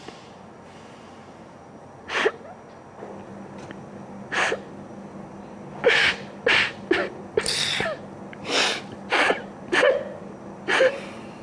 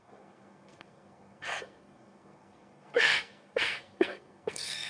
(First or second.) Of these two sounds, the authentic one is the first